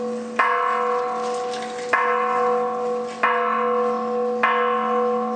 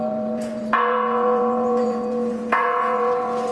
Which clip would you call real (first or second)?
first